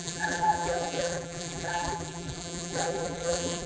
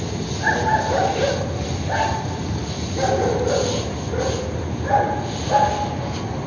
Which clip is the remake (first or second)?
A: first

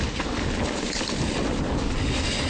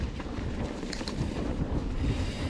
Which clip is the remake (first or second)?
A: second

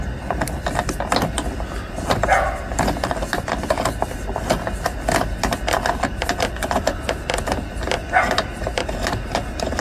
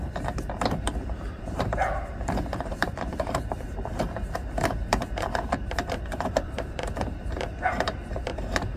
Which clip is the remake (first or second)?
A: second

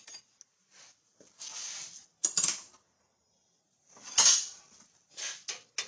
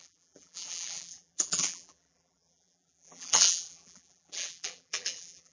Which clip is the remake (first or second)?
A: second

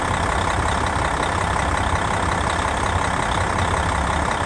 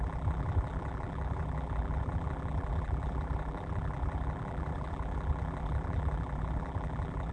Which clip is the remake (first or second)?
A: second